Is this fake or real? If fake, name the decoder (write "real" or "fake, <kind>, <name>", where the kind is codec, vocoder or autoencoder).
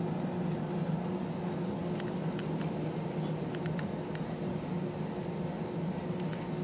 real